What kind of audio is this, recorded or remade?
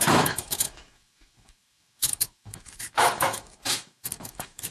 remade